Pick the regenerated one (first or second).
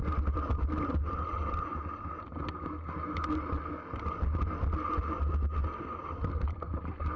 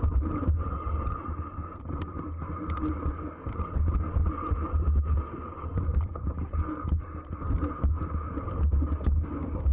second